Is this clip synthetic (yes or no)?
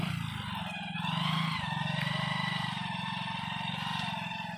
no